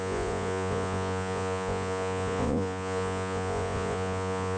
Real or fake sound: fake